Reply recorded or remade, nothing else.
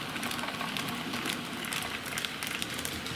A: recorded